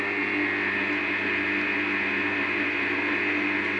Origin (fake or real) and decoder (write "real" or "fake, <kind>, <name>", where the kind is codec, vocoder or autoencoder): real